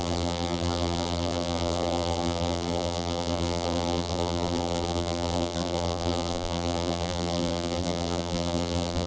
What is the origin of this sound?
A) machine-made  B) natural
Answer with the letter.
A